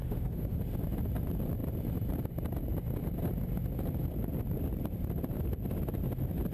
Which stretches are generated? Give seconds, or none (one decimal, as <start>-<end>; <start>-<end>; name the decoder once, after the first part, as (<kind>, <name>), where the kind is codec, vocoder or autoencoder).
0.0-0.6 (autoencoder, DAC-VAE)